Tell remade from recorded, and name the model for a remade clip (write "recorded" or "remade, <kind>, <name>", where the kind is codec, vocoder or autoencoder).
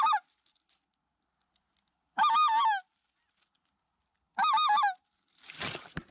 recorded